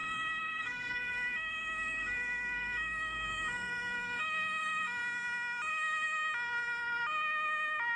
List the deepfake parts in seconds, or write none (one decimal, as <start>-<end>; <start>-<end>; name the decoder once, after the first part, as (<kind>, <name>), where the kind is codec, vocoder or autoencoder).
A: 0.0-5.0 (codec, DAC); 5.7-6.2